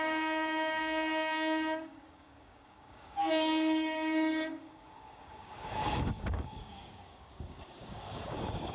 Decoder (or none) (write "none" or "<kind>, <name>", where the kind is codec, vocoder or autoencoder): codec, DAC